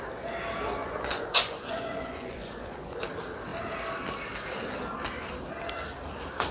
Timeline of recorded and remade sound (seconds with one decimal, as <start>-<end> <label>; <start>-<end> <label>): 0.0-0.8 recorded; 0.8-3.0 remade; 3.0-6.5 recorded